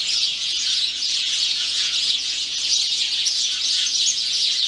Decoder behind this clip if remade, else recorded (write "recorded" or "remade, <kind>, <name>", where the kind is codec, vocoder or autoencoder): remade, vocoder, Vocos